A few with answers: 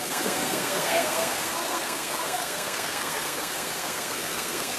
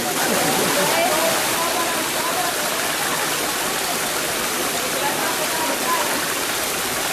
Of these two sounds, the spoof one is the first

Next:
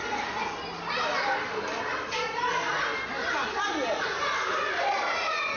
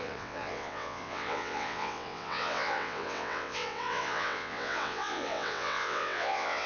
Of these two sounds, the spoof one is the second